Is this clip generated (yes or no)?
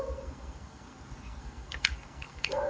yes